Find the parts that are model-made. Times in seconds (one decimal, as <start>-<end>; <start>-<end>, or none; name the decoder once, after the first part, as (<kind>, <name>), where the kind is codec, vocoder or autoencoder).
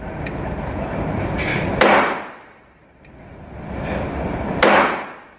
none